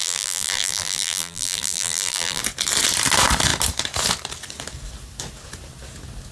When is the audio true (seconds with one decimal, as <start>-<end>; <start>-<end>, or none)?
2.4-6.3